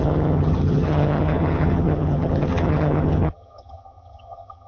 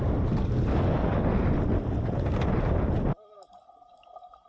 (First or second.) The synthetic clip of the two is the first